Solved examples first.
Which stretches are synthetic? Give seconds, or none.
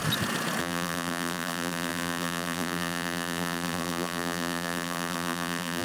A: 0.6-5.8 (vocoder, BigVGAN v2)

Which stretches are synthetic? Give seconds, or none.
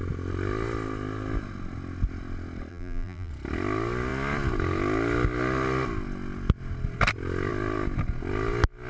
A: 2.7-3.3 (vocoder, BigVGAN v2)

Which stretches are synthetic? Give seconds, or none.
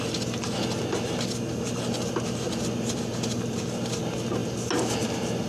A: none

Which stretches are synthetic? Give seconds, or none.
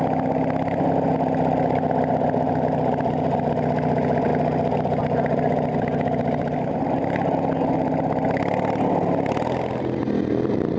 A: none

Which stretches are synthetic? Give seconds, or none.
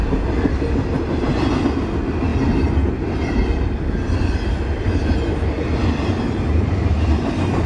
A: none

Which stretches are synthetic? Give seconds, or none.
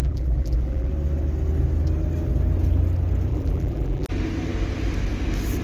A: 0.0-0.9 (vocoder, BigVGAN v2); 3.3-4.1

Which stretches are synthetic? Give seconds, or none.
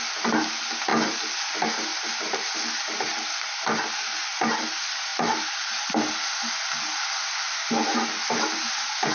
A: 1.9-2.5 (vocoder, BigVGAN v2); 3.1-3.6; 5.1-7.8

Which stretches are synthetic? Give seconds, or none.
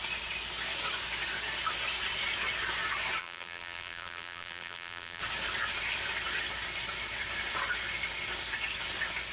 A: 3.2-5.2 (vocoder, BigVGAN v2)